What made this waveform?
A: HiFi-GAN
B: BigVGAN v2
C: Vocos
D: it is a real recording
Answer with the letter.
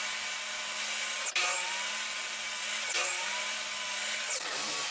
D